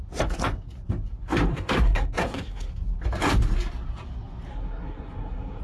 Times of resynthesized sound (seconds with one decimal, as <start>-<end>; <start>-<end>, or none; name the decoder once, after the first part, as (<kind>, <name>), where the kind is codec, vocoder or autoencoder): 1.5-2.7 (codec, SNAC); 4.5-5.6